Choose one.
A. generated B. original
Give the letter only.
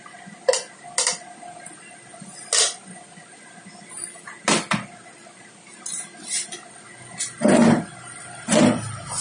B